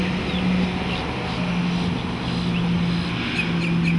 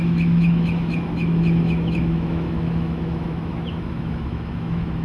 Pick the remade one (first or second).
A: second